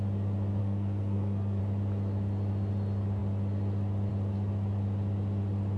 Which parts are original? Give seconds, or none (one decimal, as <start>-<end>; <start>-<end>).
0.0-0.6; 1.6-5.8

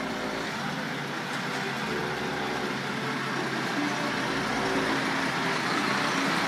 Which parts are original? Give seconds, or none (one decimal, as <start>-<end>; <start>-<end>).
0.0-6.5

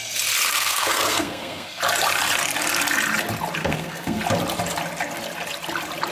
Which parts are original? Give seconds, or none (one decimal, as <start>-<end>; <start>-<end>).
0.0-0.5; 1.8-3.6; 4.2-6.1